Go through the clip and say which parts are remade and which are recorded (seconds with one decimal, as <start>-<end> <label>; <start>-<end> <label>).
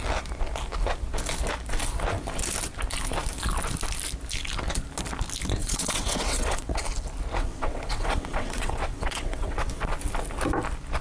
0.0-5.6 recorded; 5.6-6.8 remade; 6.8-7.4 recorded; 7.4-9.7 remade; 9.7-11.0 recorded